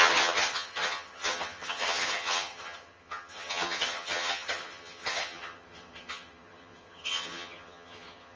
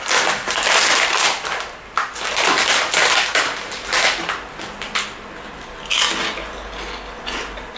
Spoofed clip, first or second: first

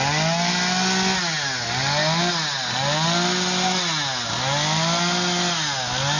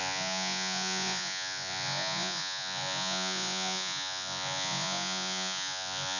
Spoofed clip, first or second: second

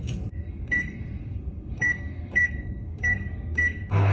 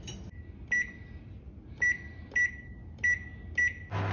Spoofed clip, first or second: first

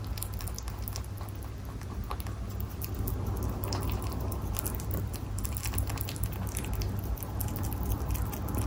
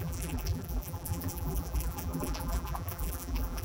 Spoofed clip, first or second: second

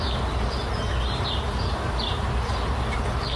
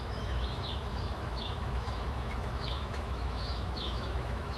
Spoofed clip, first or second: second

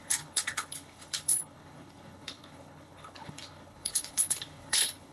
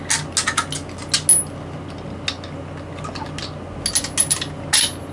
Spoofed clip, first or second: first